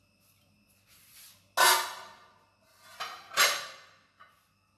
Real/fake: real